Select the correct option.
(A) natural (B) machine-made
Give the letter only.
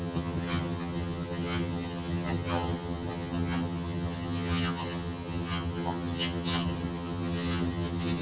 B